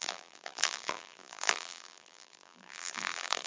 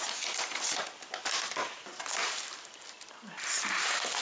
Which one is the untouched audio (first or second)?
second